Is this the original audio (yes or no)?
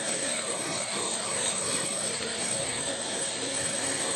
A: no